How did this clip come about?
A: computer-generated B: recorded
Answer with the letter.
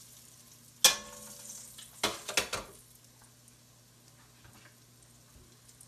B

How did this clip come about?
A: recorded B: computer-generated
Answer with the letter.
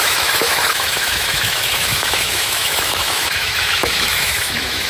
B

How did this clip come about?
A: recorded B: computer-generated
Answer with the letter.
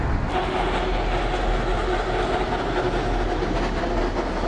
A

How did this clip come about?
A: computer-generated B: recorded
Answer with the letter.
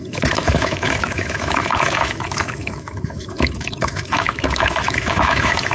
A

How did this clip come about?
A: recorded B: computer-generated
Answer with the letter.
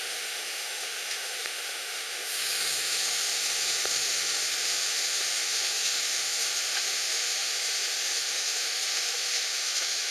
B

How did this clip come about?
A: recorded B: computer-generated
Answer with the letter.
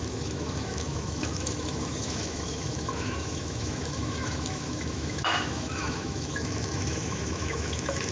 B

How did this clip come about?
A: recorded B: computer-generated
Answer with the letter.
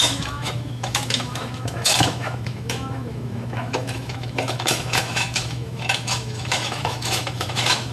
B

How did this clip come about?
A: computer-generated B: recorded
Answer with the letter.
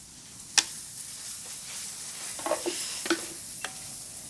B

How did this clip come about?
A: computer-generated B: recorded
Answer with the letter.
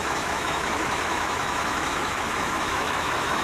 A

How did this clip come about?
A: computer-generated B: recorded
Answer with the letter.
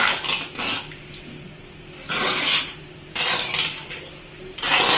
B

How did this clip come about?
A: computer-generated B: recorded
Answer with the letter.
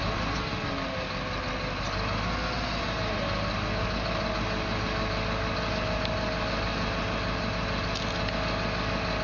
B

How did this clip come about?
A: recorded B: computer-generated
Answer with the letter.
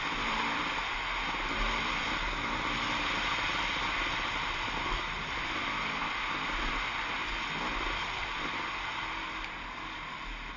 A